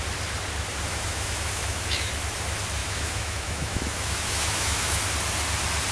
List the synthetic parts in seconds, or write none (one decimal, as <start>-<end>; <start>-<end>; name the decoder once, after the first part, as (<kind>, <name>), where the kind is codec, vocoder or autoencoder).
0.9-2.1 (autoencoder, DAC-VAE); 2.8-5.0